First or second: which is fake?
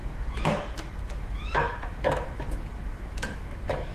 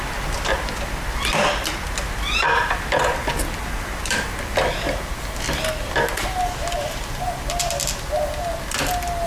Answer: first